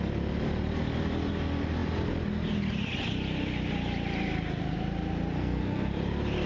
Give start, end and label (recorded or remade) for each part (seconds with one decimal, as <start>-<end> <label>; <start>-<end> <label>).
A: 0.0-5.4 recorded; 5.4-5.9 remade; 5.9-6.5 recorded